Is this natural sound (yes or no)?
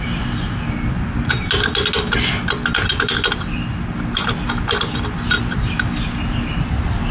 yes